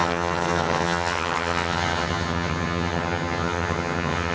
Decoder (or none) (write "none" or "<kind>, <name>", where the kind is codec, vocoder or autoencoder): vocoder, HiFi-GAN